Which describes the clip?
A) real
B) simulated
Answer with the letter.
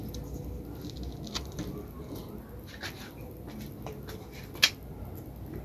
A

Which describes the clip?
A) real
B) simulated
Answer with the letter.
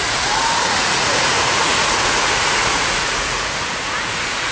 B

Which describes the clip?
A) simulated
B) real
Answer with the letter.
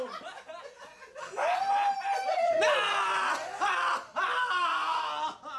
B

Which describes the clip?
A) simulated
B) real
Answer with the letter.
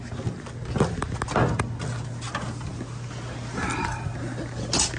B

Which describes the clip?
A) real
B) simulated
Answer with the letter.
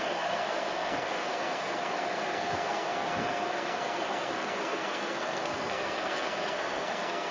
B